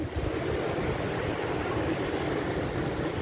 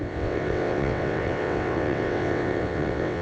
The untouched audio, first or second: first